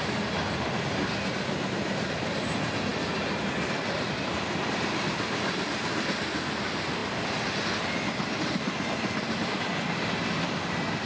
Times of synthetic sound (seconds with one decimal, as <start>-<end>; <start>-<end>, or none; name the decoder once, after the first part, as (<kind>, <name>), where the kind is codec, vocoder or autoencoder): none